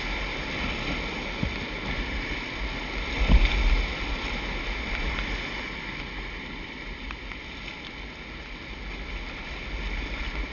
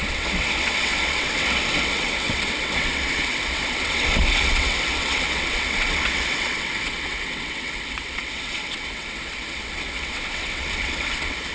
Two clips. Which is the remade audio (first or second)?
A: second